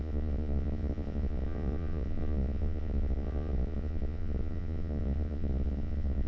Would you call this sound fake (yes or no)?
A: yes